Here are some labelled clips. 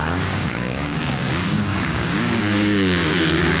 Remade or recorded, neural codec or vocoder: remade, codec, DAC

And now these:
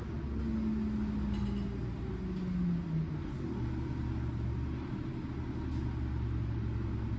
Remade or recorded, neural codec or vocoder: recorded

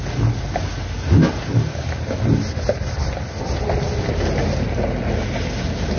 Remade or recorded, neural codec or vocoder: recorded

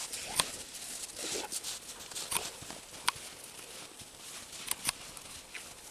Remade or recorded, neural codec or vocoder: recorded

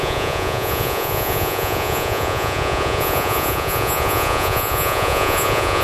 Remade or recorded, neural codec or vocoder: remade, vocoder, Vocos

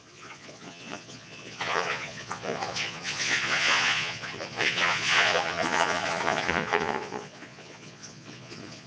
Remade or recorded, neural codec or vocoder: remade, vocoder, Vocos